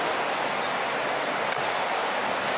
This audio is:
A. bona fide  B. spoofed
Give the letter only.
A